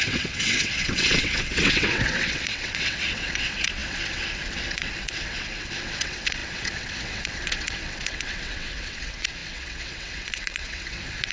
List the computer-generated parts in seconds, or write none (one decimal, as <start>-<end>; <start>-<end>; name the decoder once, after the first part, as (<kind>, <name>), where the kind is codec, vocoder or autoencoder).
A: 0.0-11.3 (vocoder, WaveNeXt)